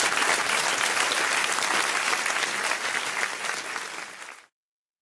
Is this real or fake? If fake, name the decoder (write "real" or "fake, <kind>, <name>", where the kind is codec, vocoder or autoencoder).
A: real